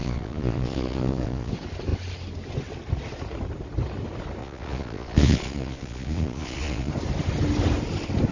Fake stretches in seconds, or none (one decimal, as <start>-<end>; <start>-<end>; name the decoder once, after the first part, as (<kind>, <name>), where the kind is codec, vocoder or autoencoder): 0.0-1.5 (vocoder, Vocos); 4.4-6.9